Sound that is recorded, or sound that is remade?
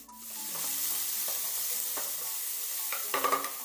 remade